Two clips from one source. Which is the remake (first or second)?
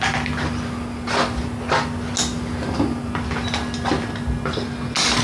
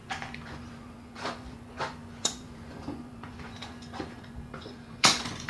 second